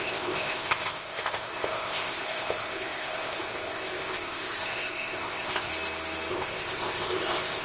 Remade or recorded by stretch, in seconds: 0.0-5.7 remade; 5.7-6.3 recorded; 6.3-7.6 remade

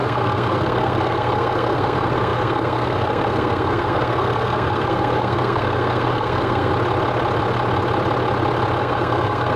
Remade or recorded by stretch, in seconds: 0.0-6.7 remade; 6.7-8.8 recorded; 8.8-9.6 remade

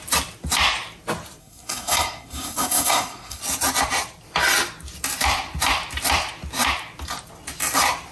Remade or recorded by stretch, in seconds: 0.0-1.4 recorded; 1.4-3.4 remade; 3.4-8.1 recorded